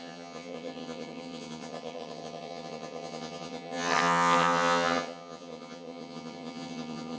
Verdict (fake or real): fake